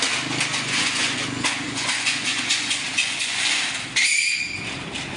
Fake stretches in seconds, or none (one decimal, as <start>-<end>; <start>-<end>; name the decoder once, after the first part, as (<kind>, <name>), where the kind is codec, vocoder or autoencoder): 0.5-3.6 (vocoder, Vocos)